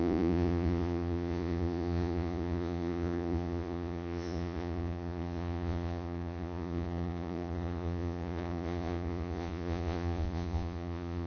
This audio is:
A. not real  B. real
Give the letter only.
A